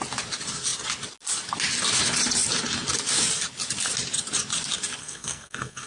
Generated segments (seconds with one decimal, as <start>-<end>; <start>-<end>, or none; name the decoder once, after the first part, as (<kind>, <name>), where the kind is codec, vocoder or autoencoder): 5.0-5.9 (codec, SNAC)